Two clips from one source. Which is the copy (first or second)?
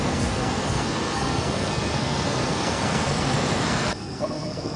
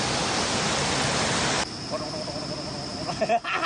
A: first